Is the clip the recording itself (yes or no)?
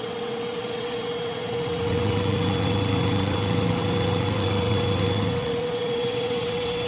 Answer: no